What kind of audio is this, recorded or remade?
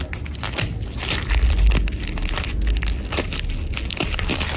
recorded